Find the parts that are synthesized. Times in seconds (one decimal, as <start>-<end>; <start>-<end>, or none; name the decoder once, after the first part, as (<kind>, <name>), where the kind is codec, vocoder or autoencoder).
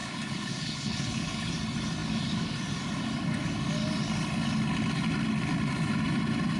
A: 0.0-1.5 (codec, HILCodec)